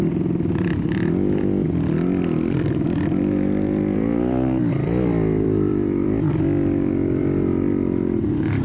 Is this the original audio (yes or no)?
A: no